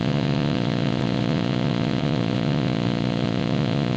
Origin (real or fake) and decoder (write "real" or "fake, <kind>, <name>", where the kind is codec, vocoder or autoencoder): fake, vocoder, Vocos